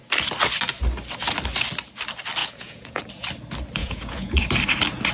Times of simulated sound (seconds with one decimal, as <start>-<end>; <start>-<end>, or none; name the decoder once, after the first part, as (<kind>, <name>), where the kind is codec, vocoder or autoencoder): 2.4-3.0 (vocoder, Vocos); 3.8-4.4